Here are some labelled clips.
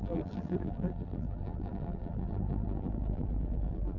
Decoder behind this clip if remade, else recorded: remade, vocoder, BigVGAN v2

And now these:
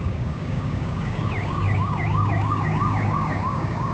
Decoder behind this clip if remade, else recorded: remade, codec, DAC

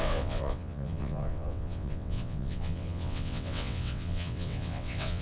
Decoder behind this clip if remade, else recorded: remade, vocoder, WaveNeXt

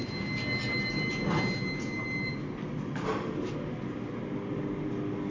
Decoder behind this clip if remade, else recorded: recorded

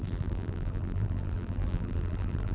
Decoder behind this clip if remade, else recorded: remade, vocoder, BigVGAN v2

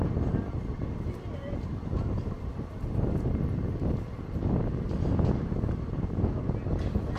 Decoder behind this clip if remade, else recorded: recorded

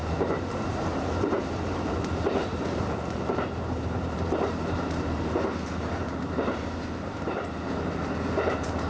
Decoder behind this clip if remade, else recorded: remade, vocoder, BigVGAN v2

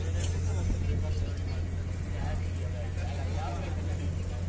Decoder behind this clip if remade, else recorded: recorded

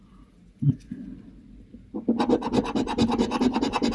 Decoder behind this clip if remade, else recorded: recorded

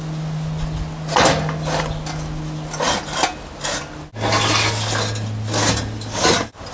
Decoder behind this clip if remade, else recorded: recorded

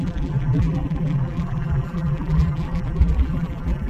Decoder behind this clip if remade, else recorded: remade, vocoder, BigVGAN v2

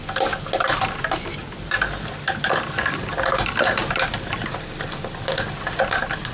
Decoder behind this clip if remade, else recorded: recorded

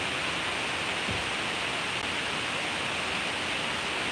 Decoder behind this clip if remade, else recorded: recorded